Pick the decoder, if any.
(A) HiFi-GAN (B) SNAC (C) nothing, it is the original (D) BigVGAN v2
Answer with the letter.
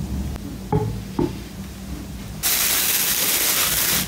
C